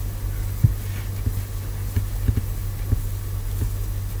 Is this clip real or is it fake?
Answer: real